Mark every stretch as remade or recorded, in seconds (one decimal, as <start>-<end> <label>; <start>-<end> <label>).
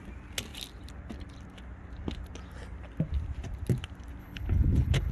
0.0-4.2 recorded; 4.2-5.1 remade